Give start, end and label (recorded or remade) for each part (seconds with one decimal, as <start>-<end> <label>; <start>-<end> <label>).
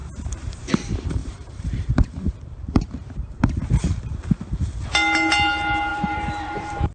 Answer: 0.0-0.7 remade; 0.7-1.2 recorded; 1.2-3.4 remade; 3.4-5.9 recorded; 5.9-6.9 remade